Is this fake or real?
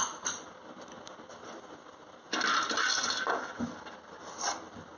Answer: real